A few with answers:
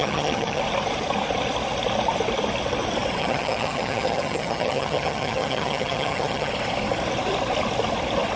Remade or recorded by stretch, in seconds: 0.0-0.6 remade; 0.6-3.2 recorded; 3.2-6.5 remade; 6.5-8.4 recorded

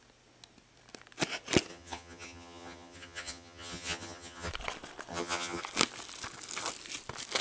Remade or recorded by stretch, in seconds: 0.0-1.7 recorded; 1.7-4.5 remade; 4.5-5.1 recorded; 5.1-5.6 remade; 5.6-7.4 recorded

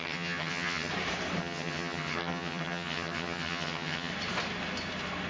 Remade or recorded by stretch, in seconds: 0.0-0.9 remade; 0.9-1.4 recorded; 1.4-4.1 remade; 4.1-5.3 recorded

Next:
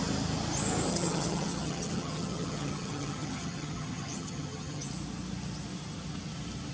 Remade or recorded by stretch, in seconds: 0.0-0.9 recorded; 0.9-4.9 remade; 4.9-6.7 recorded